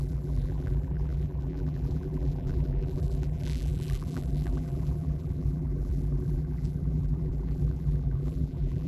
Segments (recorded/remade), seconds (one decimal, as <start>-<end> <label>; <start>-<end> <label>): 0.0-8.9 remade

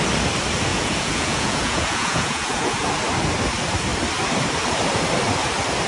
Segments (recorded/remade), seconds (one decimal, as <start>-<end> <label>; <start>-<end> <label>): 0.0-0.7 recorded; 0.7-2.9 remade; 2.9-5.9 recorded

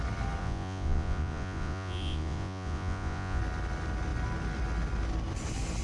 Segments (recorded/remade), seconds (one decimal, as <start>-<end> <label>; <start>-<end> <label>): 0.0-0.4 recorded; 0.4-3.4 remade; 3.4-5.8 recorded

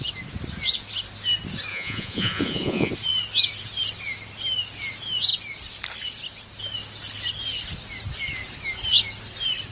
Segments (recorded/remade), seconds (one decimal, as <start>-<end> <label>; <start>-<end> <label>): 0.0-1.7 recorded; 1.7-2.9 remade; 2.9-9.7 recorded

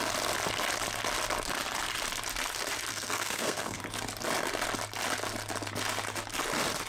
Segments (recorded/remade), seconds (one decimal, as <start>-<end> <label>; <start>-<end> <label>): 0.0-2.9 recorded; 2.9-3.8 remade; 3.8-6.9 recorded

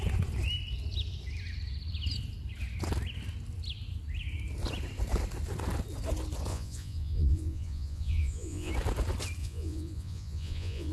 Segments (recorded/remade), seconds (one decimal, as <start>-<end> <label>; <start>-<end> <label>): 0.0-6.5 recorded; 6.5-8.7 remade; 8.7-9.4 recorded; 9.4-10.9 remade

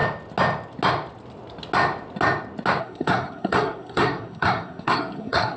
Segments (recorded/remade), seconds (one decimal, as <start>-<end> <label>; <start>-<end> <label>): 0.0-2.8 recorded; 2.8-5.6 remade